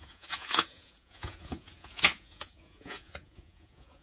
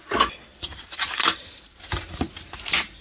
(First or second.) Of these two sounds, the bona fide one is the second